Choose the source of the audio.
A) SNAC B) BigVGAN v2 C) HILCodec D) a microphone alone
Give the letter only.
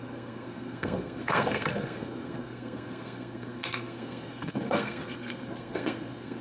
A